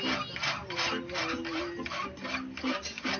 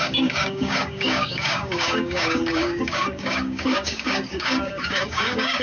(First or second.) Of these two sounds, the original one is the first